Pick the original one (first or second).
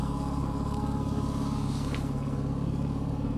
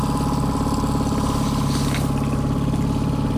second